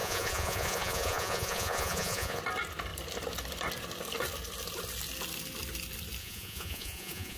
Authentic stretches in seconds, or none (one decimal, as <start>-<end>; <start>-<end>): 2.4-6.2